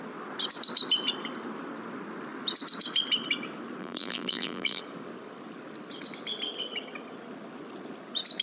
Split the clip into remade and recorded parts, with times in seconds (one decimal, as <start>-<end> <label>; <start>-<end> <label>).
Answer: 0.0-3.8 recorded; 3.8-4.8 remade; 4.8-8.4 recorded